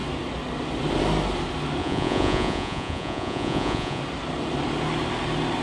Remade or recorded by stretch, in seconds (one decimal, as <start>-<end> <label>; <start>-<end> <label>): 0.0-1.8 recorded; 1.8-4.0 remade; 4.0-5.6 recorded